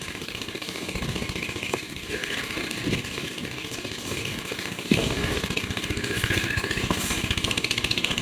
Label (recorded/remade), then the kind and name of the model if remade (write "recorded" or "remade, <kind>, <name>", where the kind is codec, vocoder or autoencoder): remade, codec, DAC